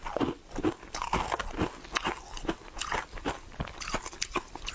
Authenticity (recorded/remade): recorded